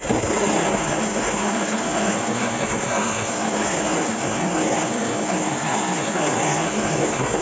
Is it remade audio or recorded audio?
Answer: remade